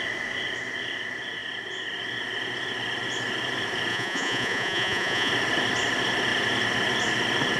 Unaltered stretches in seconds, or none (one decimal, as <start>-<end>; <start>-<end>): 0.0-3.9; 5.3-7.6